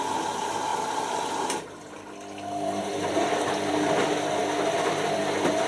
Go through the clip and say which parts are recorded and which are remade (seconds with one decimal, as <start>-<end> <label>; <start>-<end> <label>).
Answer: 0.0-5.7 recorded